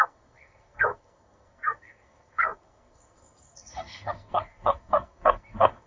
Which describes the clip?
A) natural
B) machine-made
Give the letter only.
B